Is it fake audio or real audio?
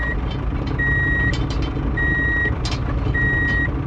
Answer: real